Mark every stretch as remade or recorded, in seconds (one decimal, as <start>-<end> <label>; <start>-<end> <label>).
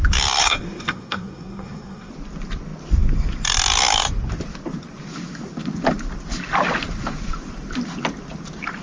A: 0.0-0.4 recorded; 0.4-2.1 remade; 2.1-8.8 recorded